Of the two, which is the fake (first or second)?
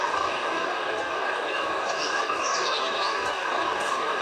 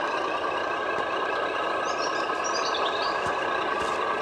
first